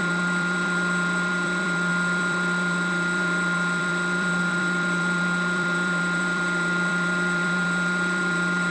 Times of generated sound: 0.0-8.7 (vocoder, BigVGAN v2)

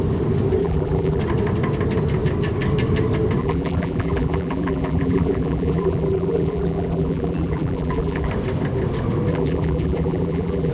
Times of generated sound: 0.6-1.2 (vocoder, BigVGAN v2); 3.4-8.3; 9.3-10.7